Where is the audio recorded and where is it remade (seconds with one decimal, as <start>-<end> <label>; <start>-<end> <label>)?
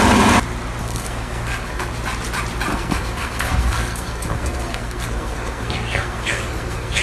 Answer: 0.0-0.8 recorded; 0.8-1.9 remade; 1.9-2.7 recorded; 2.7-7.0 remade